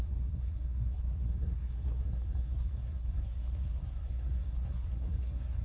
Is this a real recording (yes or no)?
no